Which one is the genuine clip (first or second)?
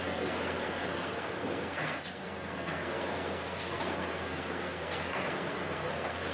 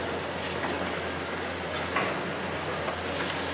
second